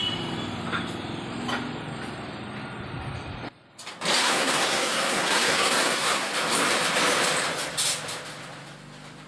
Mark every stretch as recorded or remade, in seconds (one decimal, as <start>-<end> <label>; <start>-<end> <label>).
0.0-4.2 recorded; 4.2-6.3 remade; 6.3-9.3 recorded